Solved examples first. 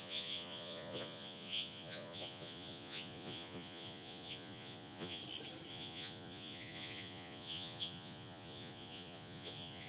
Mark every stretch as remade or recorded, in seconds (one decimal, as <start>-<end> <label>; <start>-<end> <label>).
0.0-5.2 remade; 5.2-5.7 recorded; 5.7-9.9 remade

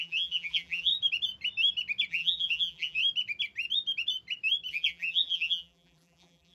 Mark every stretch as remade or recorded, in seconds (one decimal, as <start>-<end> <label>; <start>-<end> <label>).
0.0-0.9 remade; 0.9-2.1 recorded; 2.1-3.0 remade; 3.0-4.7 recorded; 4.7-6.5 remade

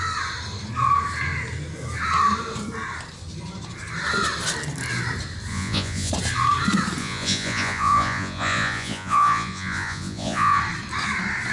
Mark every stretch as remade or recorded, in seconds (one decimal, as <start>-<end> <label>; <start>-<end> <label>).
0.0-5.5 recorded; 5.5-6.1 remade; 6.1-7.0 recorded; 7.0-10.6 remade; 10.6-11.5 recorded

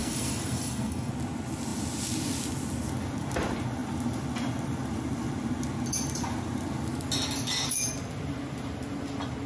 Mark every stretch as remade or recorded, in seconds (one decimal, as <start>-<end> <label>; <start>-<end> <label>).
0.0-1.1 remade; 1.1-9.5 recorded

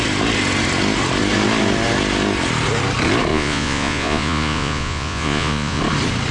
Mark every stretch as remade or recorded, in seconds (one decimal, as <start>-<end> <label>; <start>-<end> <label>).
0.0-3.3 recorded; 3.3-5.8 remade; 5.8-6.3 recorded

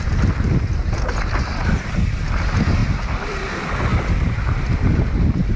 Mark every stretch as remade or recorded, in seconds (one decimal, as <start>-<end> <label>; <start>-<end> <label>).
0.0-5.6 recorded